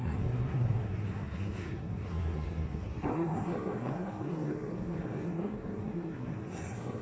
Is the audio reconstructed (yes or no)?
yes